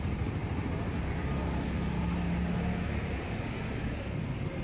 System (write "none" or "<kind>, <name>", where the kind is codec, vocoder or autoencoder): none